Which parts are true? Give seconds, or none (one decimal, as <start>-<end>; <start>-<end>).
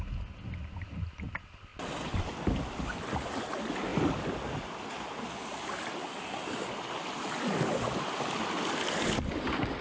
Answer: 0.0-9.8